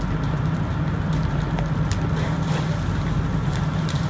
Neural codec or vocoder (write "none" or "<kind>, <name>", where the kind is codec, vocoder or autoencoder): none